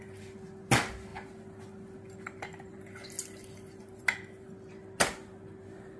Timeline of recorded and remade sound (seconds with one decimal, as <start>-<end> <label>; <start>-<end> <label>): 0.0-6.0 recorded